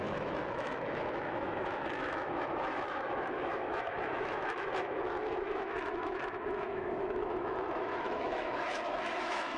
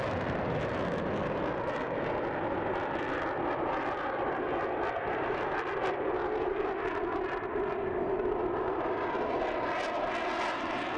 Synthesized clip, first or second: first